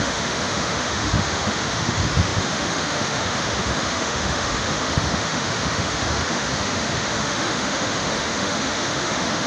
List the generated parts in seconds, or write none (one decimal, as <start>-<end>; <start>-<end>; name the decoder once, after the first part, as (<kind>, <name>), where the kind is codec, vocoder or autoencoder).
0.0-9.5 (autoencoder, DAC-VAE)